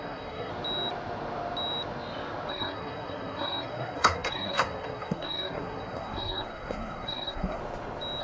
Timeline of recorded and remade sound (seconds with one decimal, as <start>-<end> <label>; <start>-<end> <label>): 0.0-0.5 remade; 0.5-2.5 recorded; 2.5-7.6 remade; 7.6-8.2 recorded

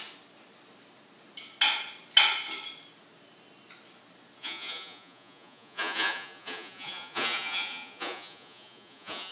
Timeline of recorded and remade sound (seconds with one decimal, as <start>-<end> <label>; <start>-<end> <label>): 0.0-4.4 recorded; 4.4-9.3 remade

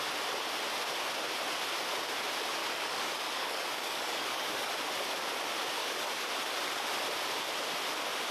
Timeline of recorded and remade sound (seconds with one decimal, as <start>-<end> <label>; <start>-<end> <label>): 0.0-2.6 recorded; 2.6-4.7 remade; 4.7-5.8 recorded; 5.8-6.3 remade; 6.3-8.3 recorded

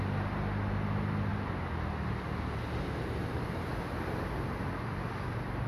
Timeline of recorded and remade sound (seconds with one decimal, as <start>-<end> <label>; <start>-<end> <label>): 0.0-5.7 recorded

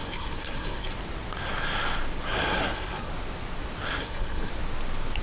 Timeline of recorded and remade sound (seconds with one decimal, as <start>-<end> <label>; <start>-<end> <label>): 0.0-0.9 remade; 0.9-2.6 recorded; 2.6-3.1 remade; 3.1-4.0 recorded; 4.0-4.5 remade; 4.5-5.2 recorded

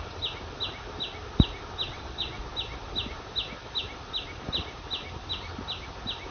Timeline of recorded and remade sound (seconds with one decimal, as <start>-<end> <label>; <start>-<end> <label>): 0.0-1.9 recorded; 1.9-2.4 remade; 2.4-6.3 recorded